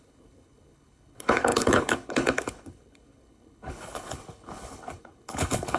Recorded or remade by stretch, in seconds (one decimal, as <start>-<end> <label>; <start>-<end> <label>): 0.0-5.8 remade